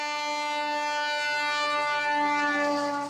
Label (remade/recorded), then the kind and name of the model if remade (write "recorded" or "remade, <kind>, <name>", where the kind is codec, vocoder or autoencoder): recorded